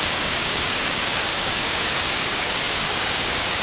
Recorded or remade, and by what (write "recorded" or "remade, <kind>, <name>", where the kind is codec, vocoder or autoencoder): remade, codec, DAC